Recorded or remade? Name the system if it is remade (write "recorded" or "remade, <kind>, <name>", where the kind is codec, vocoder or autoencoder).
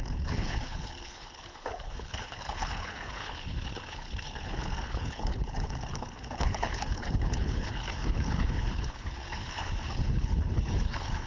remade, codec, HILCodec